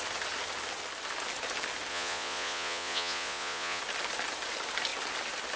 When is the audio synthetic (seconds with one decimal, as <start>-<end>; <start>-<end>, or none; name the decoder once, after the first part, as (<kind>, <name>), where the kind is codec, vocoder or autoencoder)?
1.9-3.8 (vocoder, Vocos)